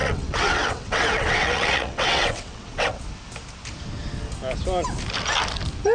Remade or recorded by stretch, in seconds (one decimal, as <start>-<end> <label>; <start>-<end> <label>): 0.0-3.0 remade; 3.0-5.9 recorded